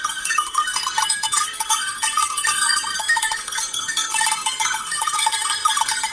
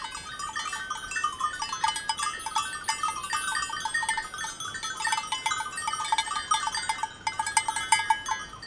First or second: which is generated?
first